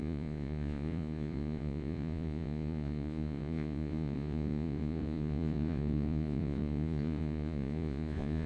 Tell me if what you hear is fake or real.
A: fake